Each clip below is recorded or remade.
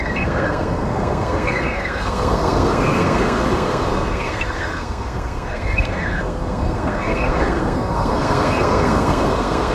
remade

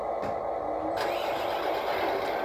recorded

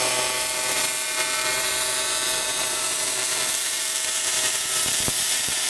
remade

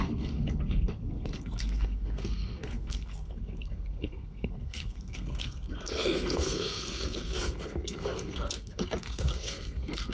remade